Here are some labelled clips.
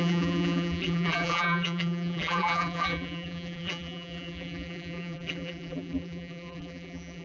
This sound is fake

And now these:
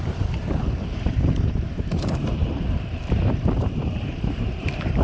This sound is fake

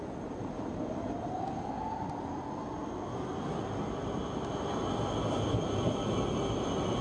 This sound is real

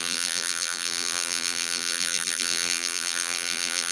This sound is fake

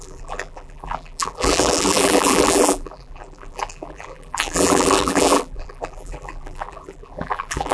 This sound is fake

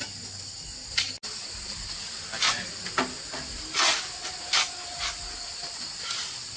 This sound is real